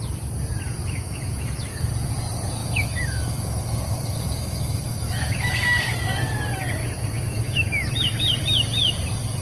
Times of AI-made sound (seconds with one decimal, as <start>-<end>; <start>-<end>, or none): 0.8-1.9; 2.6-5.5; 6.8-7.9